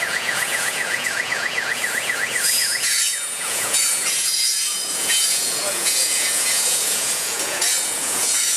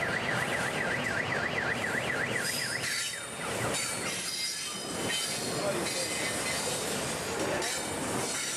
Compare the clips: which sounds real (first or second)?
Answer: second